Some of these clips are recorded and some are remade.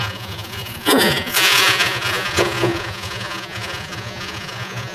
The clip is remade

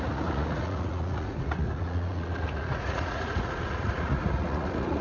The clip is remade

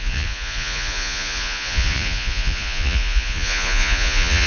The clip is remade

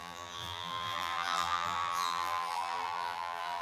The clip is remade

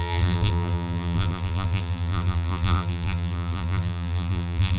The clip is remade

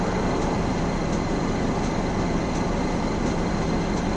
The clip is recorded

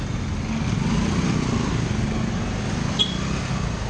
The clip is recorded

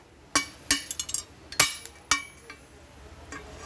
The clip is recorded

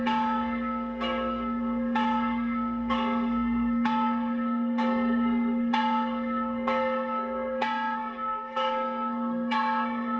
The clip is remade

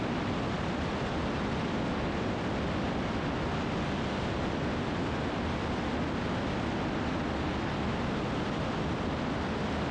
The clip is remade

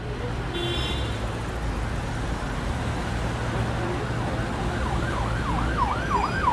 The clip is recorded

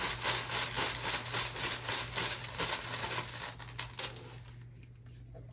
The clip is recorded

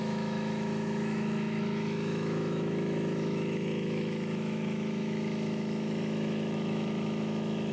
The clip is remade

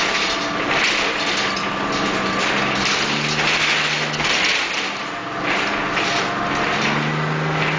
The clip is recorded